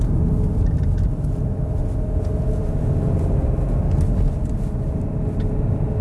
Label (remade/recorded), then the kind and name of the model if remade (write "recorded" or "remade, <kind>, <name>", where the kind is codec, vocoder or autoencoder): recorded